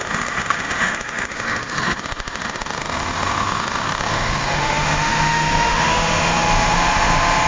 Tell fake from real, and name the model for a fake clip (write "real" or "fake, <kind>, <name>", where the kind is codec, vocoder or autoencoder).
fake, autoencoder, DAC-VAE